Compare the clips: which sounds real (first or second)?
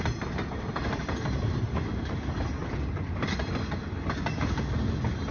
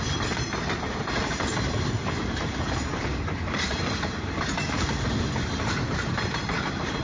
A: first